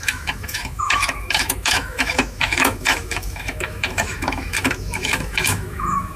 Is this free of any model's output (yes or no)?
no